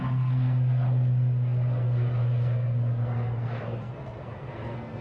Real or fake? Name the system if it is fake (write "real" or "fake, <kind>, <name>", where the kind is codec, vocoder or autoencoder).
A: fake, codec, SNAC